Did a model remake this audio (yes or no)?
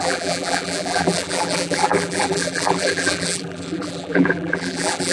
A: yes